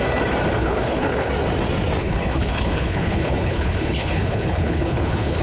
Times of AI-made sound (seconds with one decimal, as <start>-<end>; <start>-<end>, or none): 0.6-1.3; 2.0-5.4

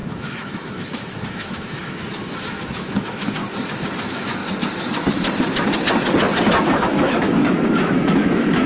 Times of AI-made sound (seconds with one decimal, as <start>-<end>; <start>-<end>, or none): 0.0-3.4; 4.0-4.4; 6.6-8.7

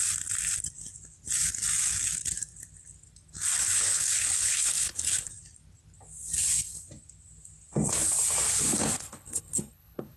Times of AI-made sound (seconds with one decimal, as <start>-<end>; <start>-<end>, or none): 3.6-5.3; 8.8-10.2